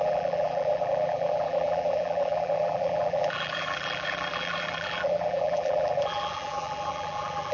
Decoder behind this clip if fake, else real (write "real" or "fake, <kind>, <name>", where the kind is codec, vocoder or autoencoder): fake, vocoder, BigVGAN v2